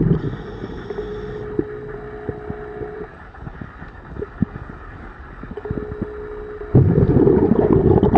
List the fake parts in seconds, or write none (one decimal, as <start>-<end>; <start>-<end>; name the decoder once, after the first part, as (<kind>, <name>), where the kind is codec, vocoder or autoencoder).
3.1-5.7 (codec, DAC)